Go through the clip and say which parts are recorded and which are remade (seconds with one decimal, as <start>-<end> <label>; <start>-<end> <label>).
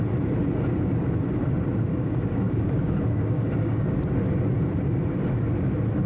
0.0-1.9 recorded; 1.9-4.0 remade; 4.0-6.1 recorded